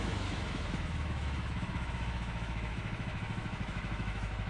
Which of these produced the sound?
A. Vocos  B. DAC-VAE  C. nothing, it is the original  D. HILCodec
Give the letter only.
B